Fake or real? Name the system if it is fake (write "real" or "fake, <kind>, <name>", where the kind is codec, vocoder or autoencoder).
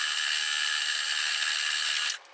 real